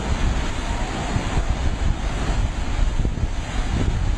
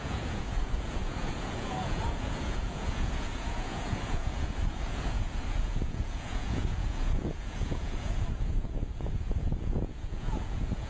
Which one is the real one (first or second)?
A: first